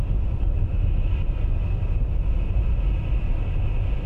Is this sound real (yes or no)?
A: yes